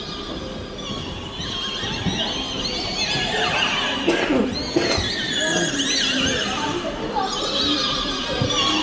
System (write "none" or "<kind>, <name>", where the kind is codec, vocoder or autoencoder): none